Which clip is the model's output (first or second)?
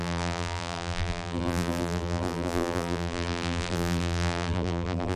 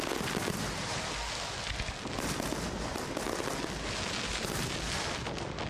first